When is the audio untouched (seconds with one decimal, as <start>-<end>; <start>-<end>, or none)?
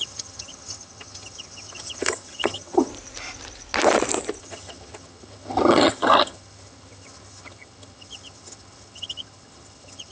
2.9-4.4